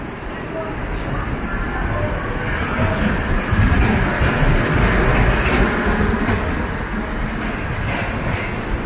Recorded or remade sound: recorded